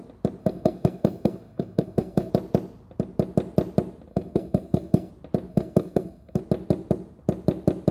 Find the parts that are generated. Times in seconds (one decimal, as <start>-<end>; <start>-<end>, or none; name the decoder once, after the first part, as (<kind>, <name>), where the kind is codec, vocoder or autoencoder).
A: 0.4-2.3 (codec, SNAC); 4.1-5.1; 5.5-6.4